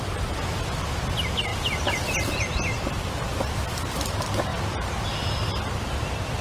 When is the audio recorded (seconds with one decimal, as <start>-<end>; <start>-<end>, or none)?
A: 0.0-6.4